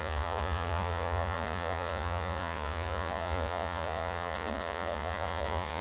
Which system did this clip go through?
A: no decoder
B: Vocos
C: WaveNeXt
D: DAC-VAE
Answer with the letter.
B